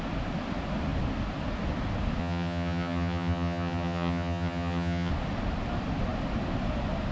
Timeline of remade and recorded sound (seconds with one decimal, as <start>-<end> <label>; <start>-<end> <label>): 0.0-2.2 recorded; 2.2-5.1 remade; 5.1-7.1 recorded